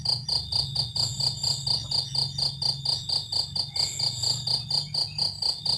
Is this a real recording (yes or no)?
yes